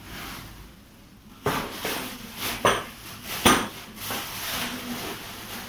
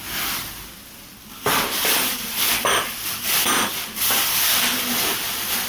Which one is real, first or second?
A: first